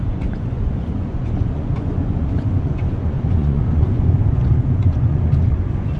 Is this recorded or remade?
remade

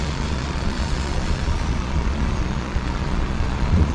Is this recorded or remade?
remade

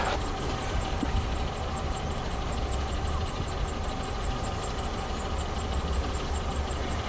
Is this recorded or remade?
recorded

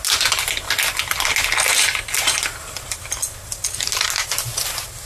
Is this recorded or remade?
recorded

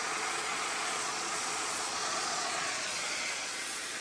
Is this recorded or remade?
remade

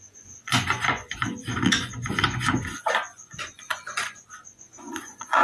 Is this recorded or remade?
remade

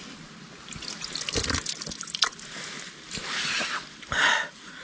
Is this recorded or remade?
recorded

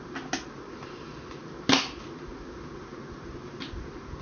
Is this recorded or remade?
recorded